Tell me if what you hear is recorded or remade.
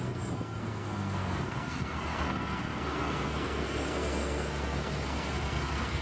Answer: remade